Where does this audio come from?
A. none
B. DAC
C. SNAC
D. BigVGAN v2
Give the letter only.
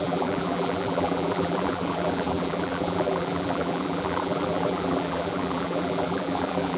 D